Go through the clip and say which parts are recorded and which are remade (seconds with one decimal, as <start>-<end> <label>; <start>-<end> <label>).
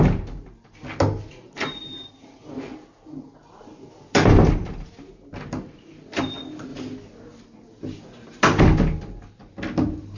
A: 0.0-10.2 recorded